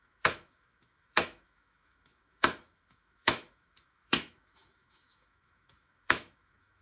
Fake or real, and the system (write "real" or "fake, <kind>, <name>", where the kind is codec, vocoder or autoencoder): fake, autoencoder, DAC-VAE